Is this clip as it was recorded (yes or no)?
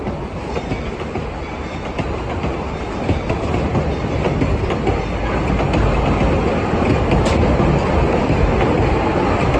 yes